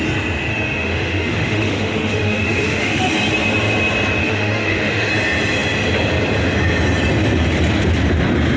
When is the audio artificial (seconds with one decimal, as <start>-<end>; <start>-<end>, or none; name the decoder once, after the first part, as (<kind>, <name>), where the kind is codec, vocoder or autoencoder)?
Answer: 0.5-3.1 (autoencoder, DAC-VAE); 4.2-5.1